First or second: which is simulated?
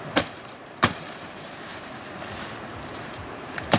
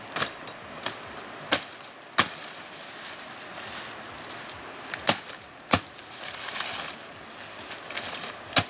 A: first